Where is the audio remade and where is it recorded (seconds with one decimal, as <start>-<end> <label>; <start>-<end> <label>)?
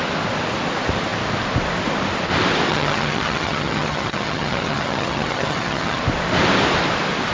0.0-2.7 recorded; 2.7-6.0 remade; 6.0-7.3 recorded